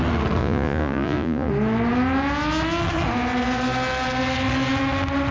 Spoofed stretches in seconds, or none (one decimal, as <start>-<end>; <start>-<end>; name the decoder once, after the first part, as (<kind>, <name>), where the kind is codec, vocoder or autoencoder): 0.4-1.5 (vocoder, Vocos)